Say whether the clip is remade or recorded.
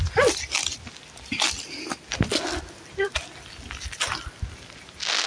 recorded